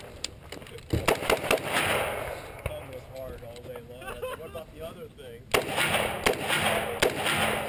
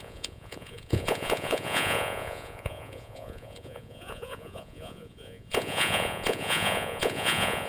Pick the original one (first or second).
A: first